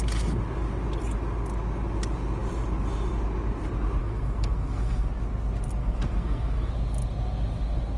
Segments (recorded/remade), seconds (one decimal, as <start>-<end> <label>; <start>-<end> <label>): 0.0-4.0 recorded; 4.0-5.1 remade; 5.1-5.8 recorded; 5.8-6.7 remade; 6.7-8.0 recorded